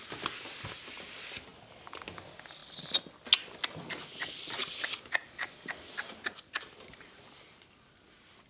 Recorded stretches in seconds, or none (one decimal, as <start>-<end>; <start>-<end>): 0.0-8.5